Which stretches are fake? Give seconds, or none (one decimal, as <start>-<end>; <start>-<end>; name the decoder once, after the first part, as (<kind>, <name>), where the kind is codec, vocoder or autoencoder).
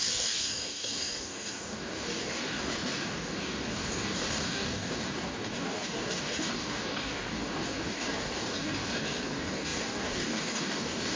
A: 0.0-11.2 (codec, DAC)